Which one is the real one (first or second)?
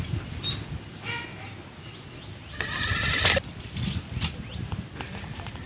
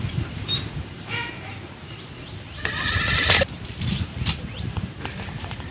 first